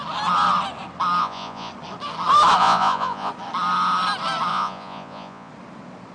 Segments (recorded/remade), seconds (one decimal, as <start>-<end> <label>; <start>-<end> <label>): 0.0-1.2 recorded; 1.2-1.7 remade; 1.7-2.6 recorded; 2.6-3.3 remade; 3.3-4.5 recorded; 4.5-5.5 remade; 5.5-6.1 recorded

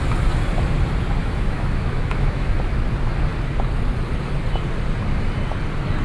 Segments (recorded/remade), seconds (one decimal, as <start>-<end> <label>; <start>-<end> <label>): 0.0-1.2 recorded; 1.2-2.5 remade; 2.5-6.0 recorded

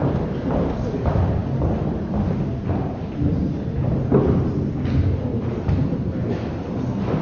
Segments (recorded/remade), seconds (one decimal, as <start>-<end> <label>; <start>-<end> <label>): 0.0-7.2 recorded

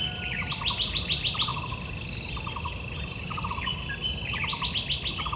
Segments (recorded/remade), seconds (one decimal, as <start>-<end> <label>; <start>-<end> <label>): 0.0-5.4 recorded